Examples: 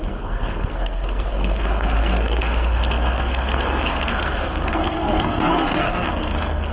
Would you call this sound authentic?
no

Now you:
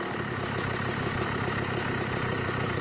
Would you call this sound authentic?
yes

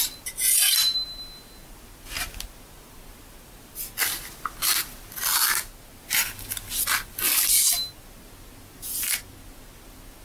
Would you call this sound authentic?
yes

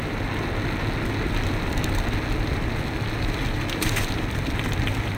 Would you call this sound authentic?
yes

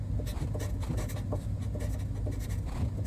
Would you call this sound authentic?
yes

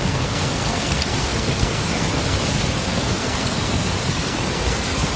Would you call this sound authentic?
no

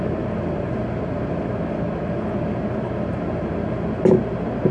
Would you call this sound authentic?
yes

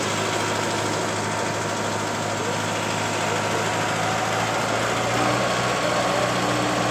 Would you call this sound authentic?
yes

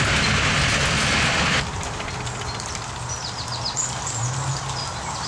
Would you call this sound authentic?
yes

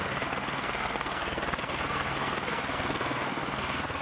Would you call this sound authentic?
no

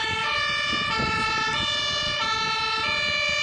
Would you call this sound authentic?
yes